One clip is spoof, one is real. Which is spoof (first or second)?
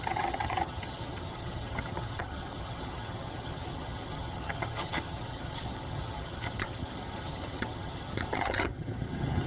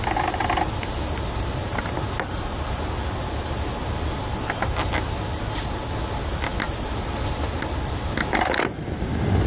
first